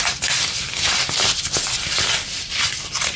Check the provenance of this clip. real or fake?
fake